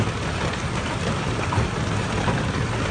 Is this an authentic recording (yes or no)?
yes